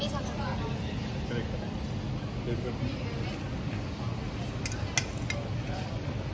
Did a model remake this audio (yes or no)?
no